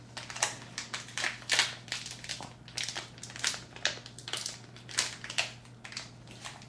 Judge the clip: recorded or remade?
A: recorded